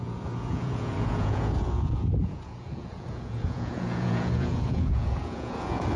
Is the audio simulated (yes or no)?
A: yes